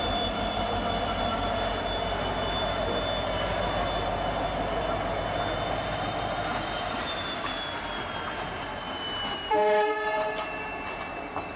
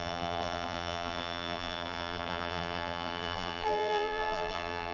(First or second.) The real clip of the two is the first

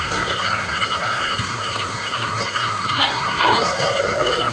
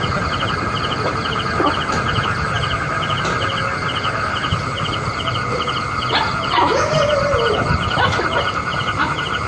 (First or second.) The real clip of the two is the second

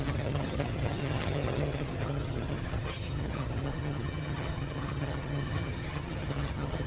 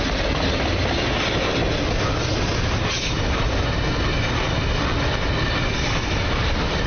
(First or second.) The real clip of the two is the second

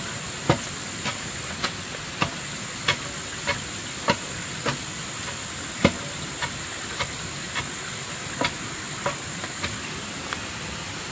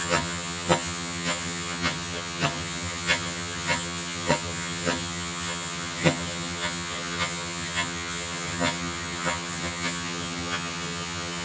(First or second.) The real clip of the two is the first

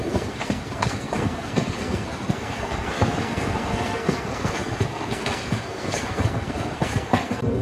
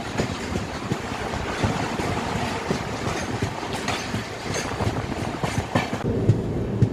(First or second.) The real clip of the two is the second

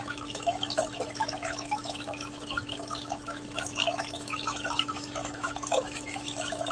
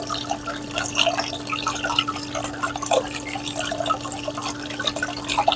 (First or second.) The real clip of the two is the second